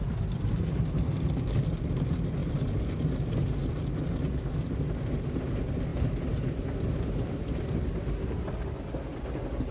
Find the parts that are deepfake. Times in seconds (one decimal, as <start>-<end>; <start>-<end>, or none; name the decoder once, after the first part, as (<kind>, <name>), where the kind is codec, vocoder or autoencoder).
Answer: none